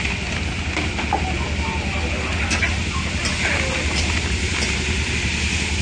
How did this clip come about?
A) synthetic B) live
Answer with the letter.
B